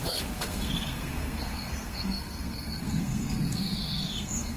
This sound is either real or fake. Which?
fake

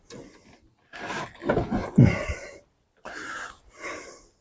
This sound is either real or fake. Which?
real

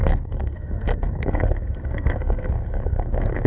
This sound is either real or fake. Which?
fake